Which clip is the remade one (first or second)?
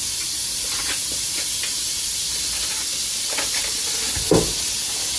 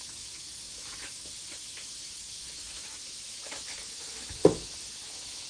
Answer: second